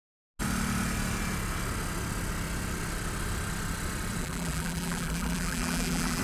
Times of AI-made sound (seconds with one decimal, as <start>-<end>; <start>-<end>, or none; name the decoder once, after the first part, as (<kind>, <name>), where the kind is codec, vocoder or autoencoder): 4.2-6.2 (vocoder, BigVGAN v2)